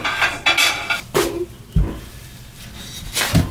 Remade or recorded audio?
recorded